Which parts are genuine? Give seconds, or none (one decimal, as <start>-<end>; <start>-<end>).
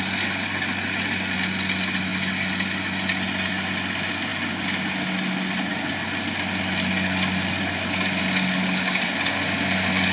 0.0-10.1